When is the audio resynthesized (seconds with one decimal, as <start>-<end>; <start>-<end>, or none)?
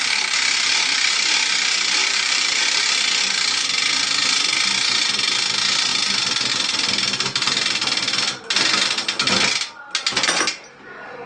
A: 2.0-2.6